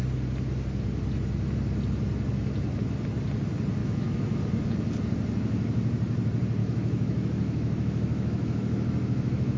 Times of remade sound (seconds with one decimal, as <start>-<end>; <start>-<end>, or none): 3.8-4.4; 6.6-9.6